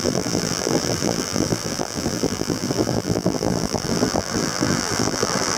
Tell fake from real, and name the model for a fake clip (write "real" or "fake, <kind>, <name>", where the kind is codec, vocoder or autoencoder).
fake, vocoder, BigVGAN v2